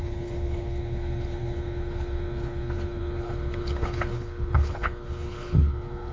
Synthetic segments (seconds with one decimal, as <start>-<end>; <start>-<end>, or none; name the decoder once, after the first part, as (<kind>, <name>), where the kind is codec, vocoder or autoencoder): 0.0-6.1 (codec, HILCodec)